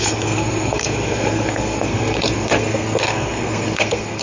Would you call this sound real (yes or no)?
no